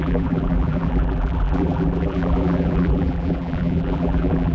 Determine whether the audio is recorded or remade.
remade